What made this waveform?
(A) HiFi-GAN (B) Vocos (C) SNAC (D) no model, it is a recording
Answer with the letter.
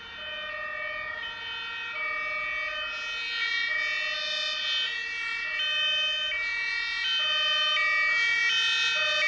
D